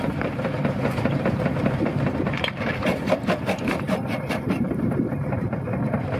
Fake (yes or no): yes